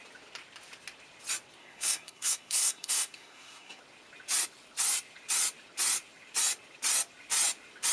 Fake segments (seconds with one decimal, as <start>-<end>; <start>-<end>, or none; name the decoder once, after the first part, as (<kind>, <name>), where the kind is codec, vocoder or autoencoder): 1.6-3.8 (codec, SNAC)